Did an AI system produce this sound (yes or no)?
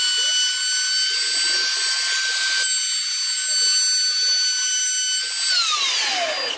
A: no